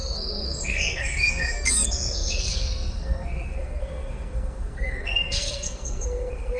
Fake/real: fake